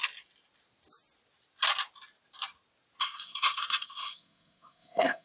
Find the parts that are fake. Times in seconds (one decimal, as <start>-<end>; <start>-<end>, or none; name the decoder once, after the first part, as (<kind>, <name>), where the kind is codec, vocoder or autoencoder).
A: 3.0-5.2 (codec, SNAC)